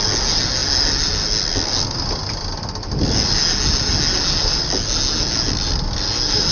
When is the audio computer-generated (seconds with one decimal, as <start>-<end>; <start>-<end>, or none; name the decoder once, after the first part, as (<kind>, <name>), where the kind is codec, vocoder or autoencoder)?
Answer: none